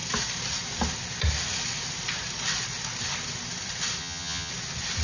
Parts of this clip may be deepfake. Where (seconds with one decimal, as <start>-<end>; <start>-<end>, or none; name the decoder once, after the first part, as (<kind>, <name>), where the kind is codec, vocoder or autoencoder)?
4.0-4.5 (vocoder, HiFi-GAN)